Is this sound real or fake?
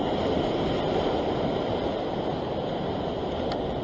real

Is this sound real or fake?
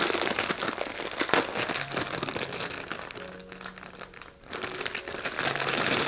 real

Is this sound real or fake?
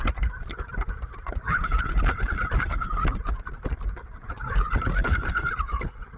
real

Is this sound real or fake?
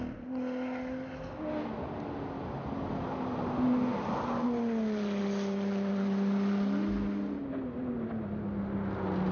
real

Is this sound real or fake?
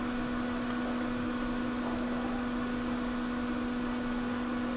real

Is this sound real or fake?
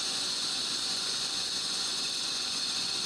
fake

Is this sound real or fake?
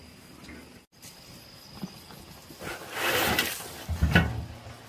real